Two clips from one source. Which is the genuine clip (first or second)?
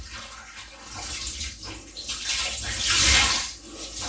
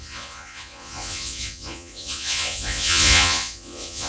first